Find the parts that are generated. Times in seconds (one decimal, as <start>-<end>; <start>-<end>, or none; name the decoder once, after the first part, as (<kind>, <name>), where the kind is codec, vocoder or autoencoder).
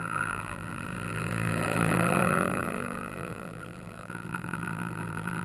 0.0-5.4 (vocoder, BigVGAN v2)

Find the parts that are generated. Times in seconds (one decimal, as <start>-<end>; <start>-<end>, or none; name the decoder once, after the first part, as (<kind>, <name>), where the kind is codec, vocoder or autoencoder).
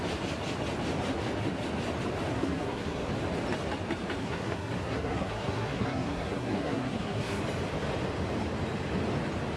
2.3-3.1 (codec, SNAC); 4.2-7.4